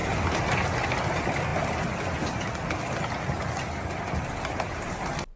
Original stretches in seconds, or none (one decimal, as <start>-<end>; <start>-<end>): 0.0-5.4